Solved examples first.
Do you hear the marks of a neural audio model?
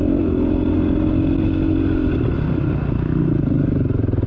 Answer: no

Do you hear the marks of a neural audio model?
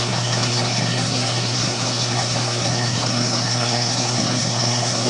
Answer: yes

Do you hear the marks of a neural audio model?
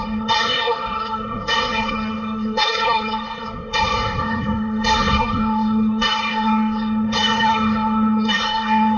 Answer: yes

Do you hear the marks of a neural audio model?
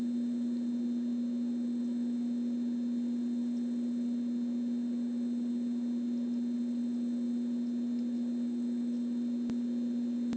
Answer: no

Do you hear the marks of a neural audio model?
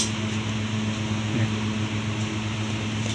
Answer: no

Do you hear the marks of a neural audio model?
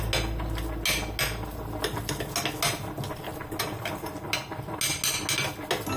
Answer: no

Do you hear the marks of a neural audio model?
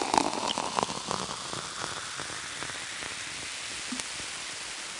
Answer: no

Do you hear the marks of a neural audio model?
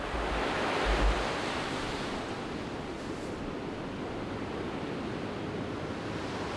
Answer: no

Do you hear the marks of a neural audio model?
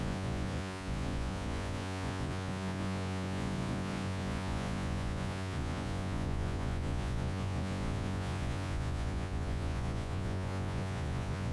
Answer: yes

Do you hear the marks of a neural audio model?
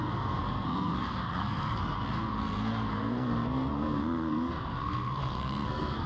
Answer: yes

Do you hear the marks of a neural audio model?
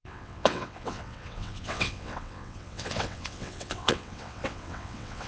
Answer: yes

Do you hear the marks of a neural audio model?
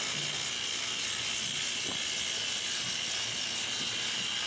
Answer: no